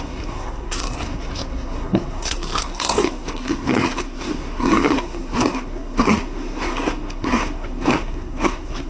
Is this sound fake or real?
fake